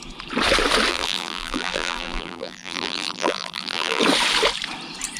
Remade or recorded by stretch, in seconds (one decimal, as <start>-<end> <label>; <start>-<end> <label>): 0.0-0.9 recorded; 0.9-4.0 remade; 4.0-5.2 recorded